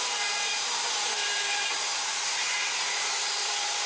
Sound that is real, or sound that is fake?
fake